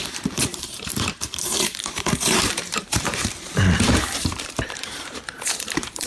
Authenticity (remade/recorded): remade